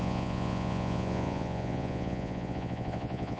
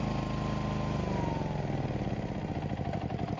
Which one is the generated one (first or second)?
first